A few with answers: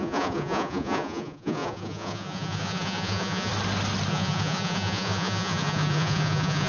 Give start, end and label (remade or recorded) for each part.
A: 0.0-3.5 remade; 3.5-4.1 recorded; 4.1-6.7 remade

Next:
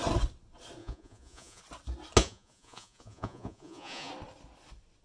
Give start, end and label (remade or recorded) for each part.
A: 0.0-0.8 recorded; 0.8-1.6 remade; 1.6-2.2 recorded; 2.2-4.1 remade; 4.1-5.0 recorded

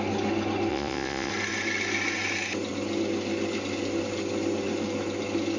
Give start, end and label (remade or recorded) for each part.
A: 0.0-0.7 recorded; 0.7-1.3 remade; 1.3-5.6 recorded

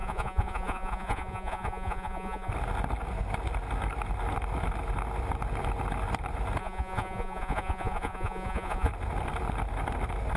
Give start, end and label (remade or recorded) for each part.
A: 0.0-2.5 remade; 2.5-6.6 recorded; 6.6-8.9 remade; 8.9-10.4 recorded

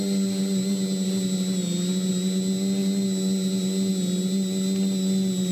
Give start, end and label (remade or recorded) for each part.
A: 0.0-5.5 recorded